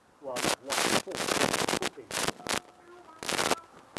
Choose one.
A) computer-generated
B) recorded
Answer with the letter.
B